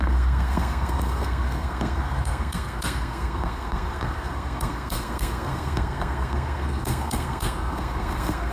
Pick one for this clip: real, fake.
fake